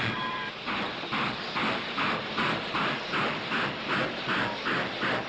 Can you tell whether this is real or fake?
fake